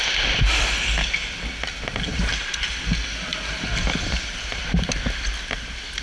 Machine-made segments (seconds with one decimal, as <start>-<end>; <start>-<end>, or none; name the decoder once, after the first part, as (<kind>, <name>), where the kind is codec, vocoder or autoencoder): 2.1-2.8 (vocoder, BigVGAN v2); 3.3-4.6